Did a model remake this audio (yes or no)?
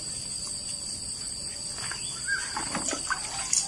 no